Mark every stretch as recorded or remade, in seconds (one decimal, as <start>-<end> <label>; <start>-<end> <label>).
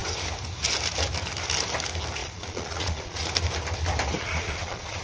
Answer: 0.0-2.2 recorded; 2.2-3.3 remade; 3.3-4.2 recorded; 4.2-5.0 remade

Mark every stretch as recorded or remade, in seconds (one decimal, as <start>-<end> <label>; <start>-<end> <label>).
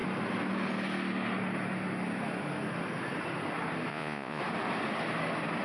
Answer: 0.0-3.9 recorded; 3.9-4.4 remade; 4.4-5.6 recorded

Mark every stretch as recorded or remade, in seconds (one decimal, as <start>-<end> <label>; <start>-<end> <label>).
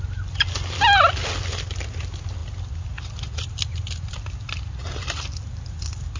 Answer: 0.0-6.2 recorded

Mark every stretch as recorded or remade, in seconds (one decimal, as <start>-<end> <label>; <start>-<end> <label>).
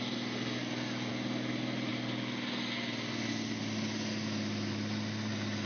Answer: 0.0-5.7 recorded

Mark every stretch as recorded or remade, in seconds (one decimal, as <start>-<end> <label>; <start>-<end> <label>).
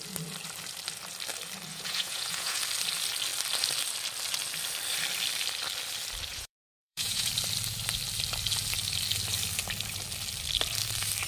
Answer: 0.0-1.7 recorded; 1.7-2.6 remade; 2.6-6.3 recorded; 6.3-7.3 remade; 7.3-11.3 recorded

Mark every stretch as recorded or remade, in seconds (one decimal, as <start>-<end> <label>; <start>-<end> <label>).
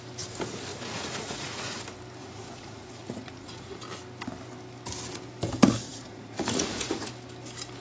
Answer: 0.0-0.7 recorded; 0.7-1.8 remade; 1.8-2.2 recorded; 2.2-3.8 remade; 3.8-5.9 recorded; 5.9-7.1 remade; 7.1-7.8 recorded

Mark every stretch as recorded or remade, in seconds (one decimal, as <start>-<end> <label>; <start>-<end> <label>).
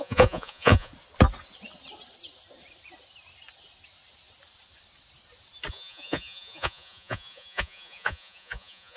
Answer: 0.0-0.9 remade; 0.9-5.7 recorded; 5.7-9.0 remade